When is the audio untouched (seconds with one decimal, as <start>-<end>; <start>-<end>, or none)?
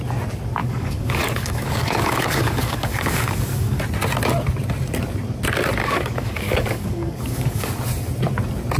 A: 0.0-0.6; 3.8-5.8; 7.7-8.8